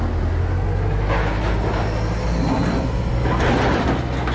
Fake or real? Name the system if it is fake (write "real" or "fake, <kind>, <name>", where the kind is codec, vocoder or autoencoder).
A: real